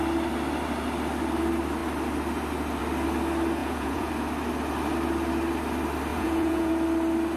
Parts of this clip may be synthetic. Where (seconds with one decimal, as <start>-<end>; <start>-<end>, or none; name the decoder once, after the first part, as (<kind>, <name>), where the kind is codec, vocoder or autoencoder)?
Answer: 3.6-4.1 (vocoder, Vocos); 6.1-6.7